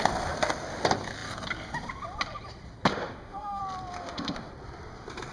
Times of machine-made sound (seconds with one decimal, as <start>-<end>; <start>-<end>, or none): 2.9-3.6; 4.0-4.5